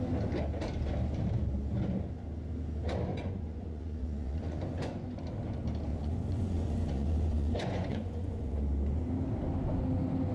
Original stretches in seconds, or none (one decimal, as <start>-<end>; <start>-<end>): 0.0-3.1; 5.2-5.9; 8.6-10.3

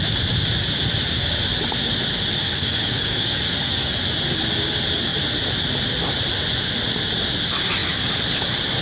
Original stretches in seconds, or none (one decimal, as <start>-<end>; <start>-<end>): 0.0-2.4; 4.0-8.8

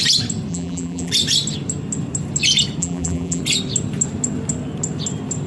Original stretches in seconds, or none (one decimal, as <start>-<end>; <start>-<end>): 0.0-0.5; 1.1-2.8; 3.4-5.5

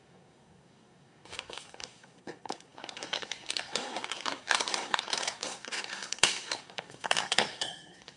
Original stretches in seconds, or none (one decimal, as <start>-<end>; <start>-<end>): none

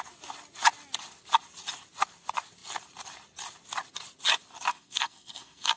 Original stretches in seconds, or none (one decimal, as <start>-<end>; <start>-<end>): 0.0-4.7